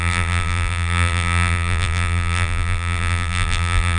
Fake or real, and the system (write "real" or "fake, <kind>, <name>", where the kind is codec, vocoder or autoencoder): fake, vocoder, BigVGAN v2